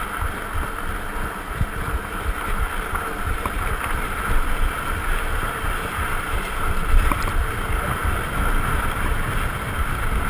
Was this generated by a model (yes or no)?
no